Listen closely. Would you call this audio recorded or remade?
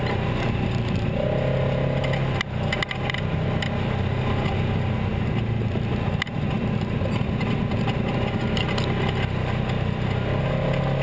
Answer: recorded